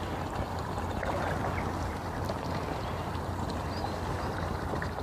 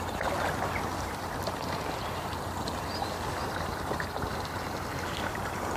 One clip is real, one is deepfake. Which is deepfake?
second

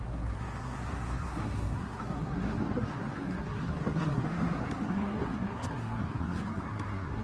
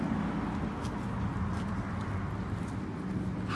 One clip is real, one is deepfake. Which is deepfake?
first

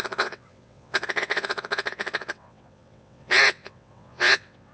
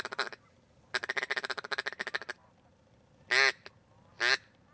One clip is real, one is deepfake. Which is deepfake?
first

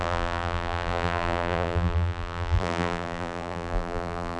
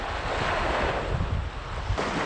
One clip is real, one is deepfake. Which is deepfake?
first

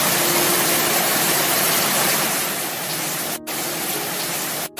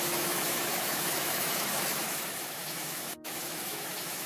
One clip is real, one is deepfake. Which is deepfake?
second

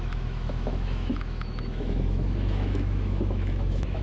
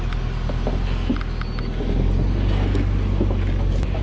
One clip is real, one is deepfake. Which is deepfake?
first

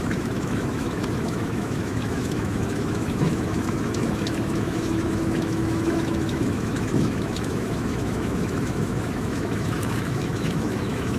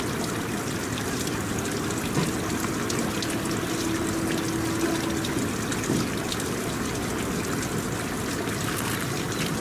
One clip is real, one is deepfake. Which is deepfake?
first